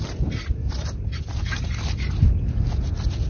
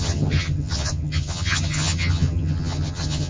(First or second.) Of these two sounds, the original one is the first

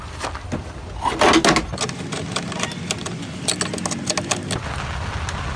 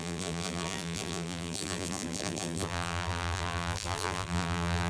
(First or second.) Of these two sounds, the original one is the first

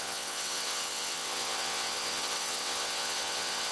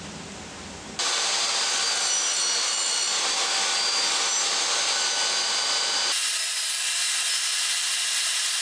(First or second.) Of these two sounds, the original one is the second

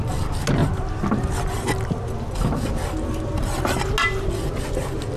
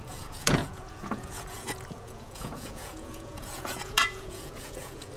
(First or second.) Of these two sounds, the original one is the first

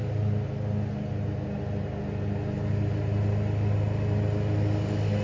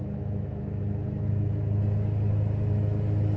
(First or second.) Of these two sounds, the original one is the first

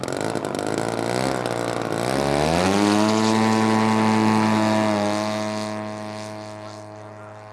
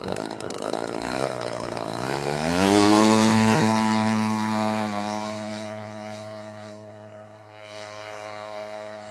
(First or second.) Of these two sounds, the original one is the first